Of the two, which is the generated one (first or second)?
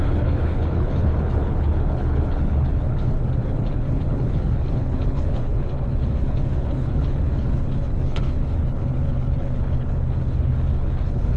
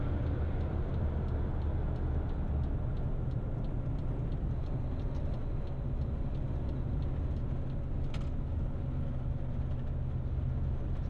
first